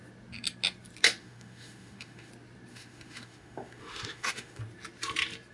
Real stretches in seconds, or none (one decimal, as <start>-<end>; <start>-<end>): 0.0-1.2; 2.3-2.7; 4.6-5.5